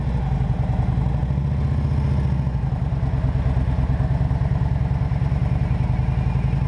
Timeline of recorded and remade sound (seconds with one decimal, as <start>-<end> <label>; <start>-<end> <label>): 0.0-6.7 recorded